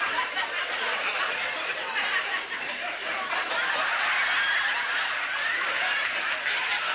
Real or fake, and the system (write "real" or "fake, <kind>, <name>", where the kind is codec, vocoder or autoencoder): real